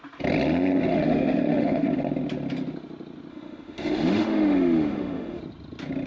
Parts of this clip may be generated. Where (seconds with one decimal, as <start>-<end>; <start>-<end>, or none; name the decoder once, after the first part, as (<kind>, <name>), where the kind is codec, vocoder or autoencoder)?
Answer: 0.9-2.0 (autoencoder, DAC-VAE); 3.3-5.4